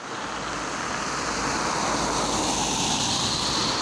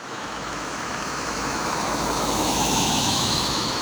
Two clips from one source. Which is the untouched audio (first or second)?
first